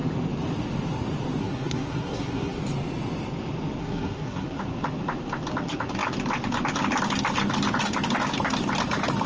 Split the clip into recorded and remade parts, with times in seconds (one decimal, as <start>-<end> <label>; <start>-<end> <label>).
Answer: 0.0-1.4 recorded; 1.4-2.6 remade; 2.6-3.8 recorded; 3.8-4.6 remade; 4.6-9.3 recorded